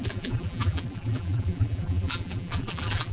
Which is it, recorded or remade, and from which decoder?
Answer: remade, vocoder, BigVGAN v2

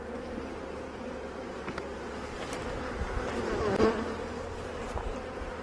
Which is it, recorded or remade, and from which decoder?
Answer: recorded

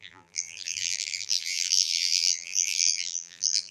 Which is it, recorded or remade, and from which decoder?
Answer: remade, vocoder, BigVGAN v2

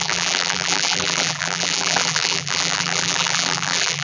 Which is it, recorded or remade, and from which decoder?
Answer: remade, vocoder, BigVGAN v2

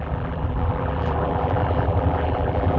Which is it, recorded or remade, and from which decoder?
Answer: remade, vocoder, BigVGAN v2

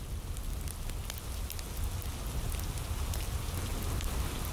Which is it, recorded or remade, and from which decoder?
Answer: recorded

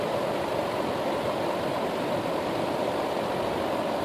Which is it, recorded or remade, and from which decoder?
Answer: recorded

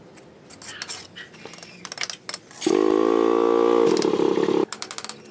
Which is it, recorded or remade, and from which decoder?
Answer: recorded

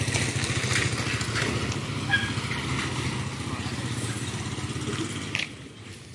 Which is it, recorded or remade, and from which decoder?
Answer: recorded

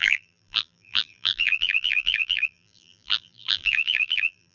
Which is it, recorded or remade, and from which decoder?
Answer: remade, vocoder, BigVGAN v2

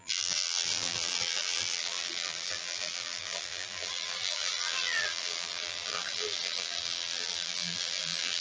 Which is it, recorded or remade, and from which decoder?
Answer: remade, vocoder, BigVGAN v2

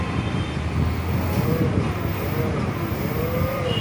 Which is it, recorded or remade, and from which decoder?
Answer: recorded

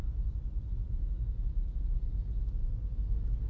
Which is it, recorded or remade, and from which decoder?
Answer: recorded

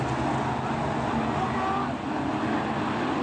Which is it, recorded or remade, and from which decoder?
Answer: recorded